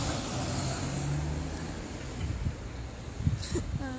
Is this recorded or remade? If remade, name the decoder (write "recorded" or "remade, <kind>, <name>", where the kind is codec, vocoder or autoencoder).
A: recorded